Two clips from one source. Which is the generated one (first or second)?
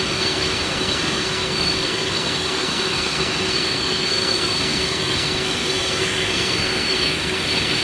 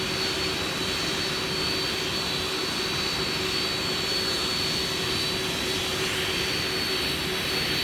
first